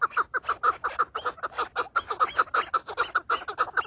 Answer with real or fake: real